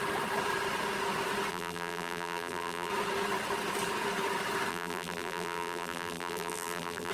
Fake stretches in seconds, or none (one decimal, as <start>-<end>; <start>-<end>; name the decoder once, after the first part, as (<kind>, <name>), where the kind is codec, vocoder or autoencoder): 1.5-2.9 (vocoder, BigVGAN v2); 4.7-7.1